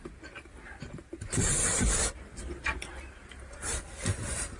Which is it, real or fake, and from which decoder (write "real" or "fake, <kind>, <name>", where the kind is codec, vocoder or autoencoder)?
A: fake, vocoder, BigVGAN v2